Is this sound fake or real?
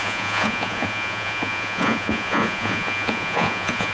fake